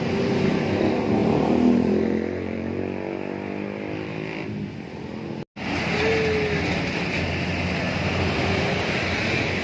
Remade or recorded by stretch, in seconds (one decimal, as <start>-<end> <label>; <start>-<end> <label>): 0.0-1.2 recorded; 1.2-2.8 remade; 2.8-9.6 recorded